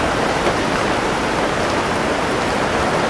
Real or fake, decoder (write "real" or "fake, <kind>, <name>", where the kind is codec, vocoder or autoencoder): real